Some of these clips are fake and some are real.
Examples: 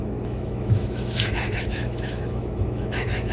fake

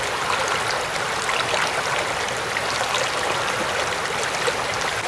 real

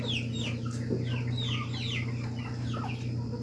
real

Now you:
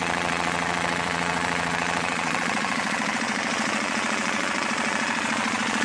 fake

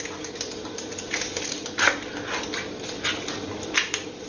real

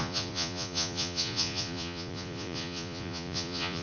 fake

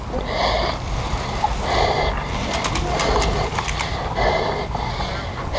real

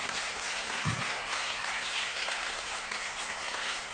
fake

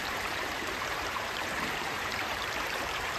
fake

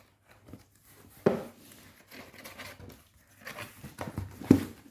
real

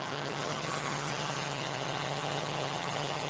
fake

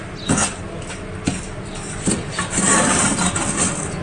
real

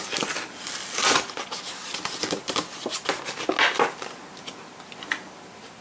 real